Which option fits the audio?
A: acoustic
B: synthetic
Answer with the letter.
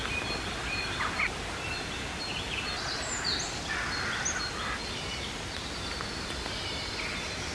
A